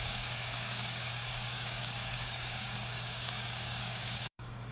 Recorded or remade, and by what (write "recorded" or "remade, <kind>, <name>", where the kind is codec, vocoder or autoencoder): remade, codec, DAC